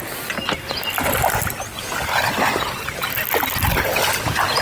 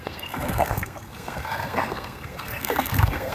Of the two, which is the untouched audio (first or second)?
first